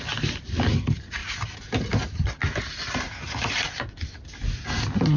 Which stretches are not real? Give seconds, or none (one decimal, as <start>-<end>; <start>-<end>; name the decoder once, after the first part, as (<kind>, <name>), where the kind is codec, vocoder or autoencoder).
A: none